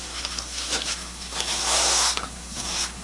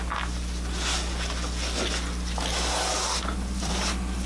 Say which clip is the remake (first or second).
first